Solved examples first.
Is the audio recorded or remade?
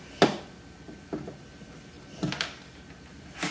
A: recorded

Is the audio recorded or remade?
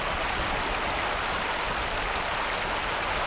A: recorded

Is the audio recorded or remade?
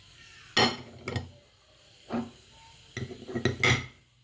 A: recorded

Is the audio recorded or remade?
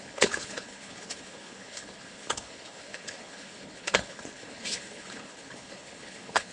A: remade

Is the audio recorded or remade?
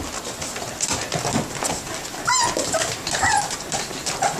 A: recorded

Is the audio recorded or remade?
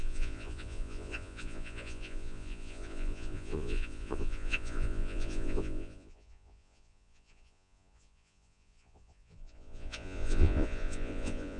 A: remade